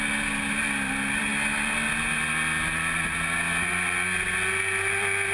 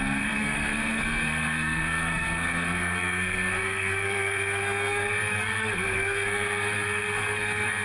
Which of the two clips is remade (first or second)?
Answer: second